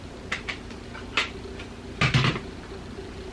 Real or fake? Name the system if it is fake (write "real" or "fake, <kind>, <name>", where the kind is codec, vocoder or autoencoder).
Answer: real